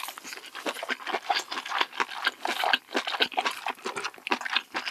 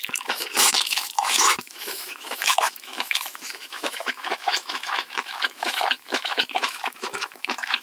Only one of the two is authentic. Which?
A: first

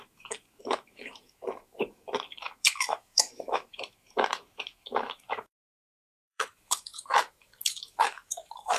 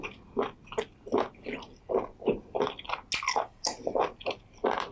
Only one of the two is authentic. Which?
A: second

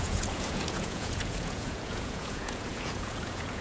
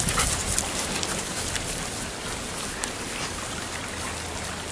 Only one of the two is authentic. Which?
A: second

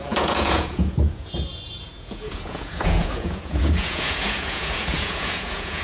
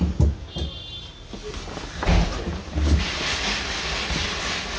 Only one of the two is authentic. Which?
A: second